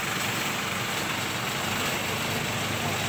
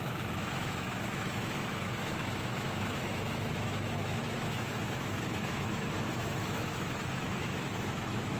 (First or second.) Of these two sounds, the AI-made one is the second